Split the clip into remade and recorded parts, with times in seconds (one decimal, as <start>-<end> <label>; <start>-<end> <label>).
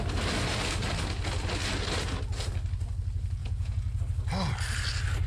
0.0-3.4 recorded; 3.4-4.0 remade; 4.0-5.3 recorded